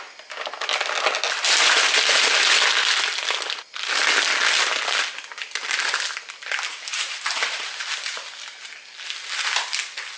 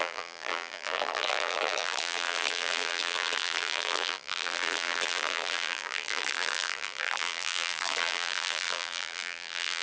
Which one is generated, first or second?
second